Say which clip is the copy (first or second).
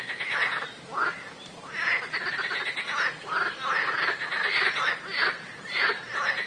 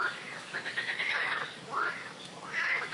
second